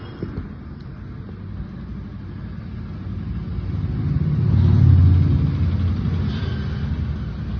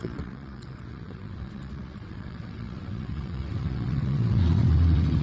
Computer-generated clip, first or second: second